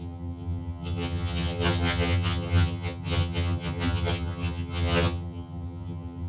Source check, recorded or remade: remade